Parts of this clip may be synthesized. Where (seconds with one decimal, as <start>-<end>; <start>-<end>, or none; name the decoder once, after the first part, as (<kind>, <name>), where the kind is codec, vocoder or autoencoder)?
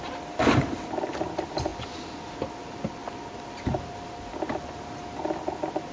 none